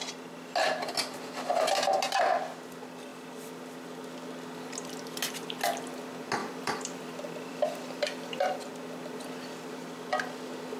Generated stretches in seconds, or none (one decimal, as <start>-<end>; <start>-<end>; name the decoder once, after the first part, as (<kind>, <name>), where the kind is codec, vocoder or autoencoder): 6.4-8.7 (vocoder, BigVGAN v2)